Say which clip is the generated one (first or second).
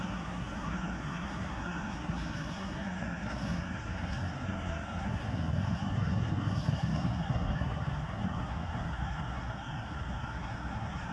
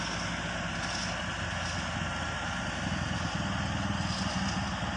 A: first